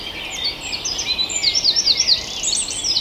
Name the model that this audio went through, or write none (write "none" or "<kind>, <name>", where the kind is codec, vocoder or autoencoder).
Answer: none